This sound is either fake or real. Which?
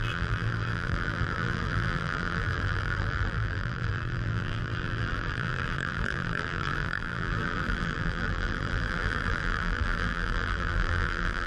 fake